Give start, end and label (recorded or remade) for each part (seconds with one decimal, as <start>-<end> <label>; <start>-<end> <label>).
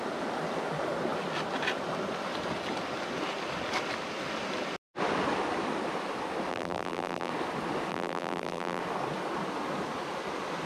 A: 0.0-6.5 recorded; 6.5-7.3 remade; 7.3-7.9 recorded; 7.9-8.8 remade; 8.8-10.7 recorded